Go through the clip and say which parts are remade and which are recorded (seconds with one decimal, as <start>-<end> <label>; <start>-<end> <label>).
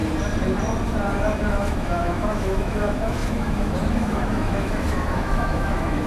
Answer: 0.0-1.5 recorded; 1.5-6.1 remade